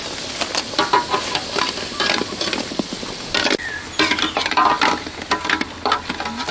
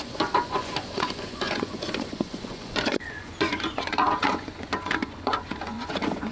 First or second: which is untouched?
first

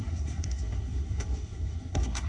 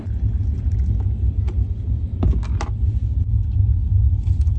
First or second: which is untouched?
second